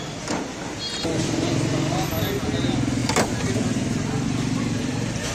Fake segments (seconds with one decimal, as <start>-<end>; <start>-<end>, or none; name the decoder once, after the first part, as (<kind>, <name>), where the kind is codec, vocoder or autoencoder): none